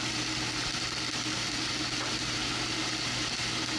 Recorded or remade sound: recorded